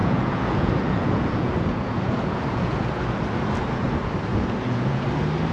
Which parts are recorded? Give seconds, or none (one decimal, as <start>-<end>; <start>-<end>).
3.2-4.3; 5.1-5.5